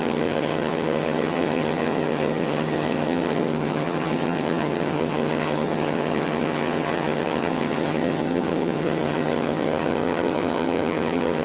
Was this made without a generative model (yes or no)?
no